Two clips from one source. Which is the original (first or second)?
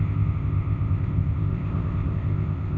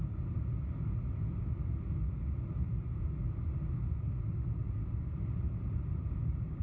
second